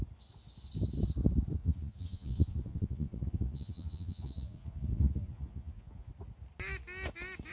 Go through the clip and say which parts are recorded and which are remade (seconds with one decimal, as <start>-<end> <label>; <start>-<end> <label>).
0.0-1.6 recorded; 1.6-6.1 remade; 6.1-7.5 recorded